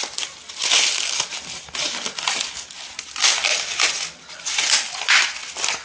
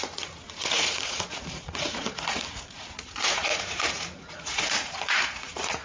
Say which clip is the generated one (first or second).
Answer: second